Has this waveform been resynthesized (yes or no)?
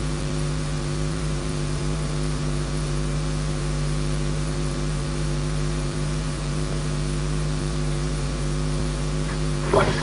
yes